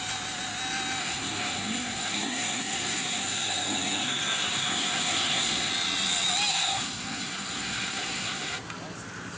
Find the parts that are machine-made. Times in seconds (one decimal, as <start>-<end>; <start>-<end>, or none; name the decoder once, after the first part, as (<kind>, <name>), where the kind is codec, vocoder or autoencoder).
1.0-5.7 (codec, SNAC); 6.5-8.6

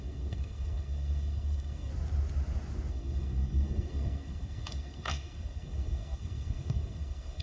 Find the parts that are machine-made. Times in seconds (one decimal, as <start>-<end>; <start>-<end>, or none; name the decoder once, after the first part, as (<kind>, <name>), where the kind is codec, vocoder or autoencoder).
0.0-1.9 (codec, SNAC); 2.9-7.4

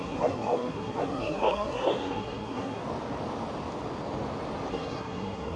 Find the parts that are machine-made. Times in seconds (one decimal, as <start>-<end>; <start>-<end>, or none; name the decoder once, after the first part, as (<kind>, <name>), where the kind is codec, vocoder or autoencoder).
0.0-2.8 (codec, SNAC); 4.7-5.6

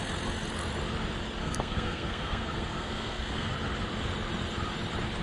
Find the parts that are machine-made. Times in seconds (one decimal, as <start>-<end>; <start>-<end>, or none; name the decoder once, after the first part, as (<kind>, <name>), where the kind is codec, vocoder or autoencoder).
1.4-3.5 (codec, SNAC)

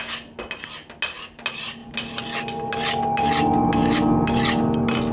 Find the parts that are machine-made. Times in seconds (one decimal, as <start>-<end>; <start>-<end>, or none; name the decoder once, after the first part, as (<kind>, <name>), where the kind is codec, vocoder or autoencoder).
none

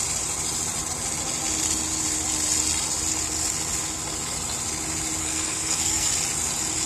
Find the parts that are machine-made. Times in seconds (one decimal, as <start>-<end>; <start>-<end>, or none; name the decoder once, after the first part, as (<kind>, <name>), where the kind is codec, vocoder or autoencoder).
5.2-6.1 (codec, SNAC)